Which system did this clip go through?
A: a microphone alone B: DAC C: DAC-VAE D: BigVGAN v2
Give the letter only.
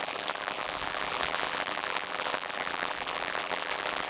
D